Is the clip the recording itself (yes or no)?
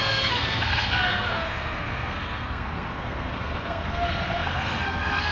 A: no